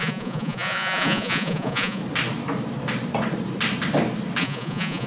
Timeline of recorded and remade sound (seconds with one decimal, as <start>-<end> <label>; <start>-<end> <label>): 0.0-2.0 remade; 2.0-4.4 recorded; 4.4-5.1 remade